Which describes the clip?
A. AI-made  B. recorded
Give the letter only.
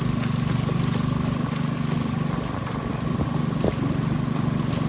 B